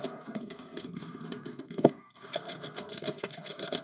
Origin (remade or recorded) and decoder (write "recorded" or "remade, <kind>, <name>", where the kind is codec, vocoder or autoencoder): remade, codec, SNAC